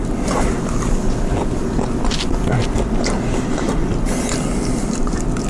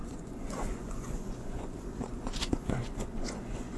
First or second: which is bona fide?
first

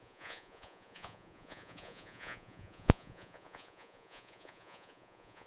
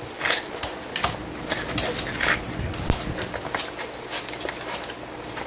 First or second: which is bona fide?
second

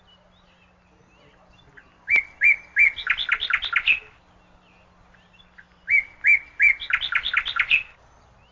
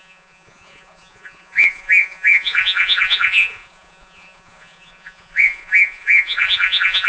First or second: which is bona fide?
first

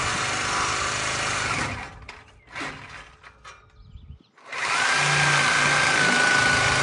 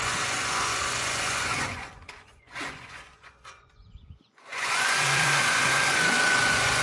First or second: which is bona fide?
first